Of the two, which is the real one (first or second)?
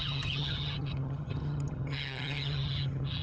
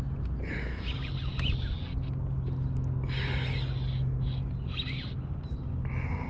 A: second